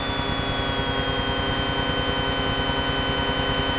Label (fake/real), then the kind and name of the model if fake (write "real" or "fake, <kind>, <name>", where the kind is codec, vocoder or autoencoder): real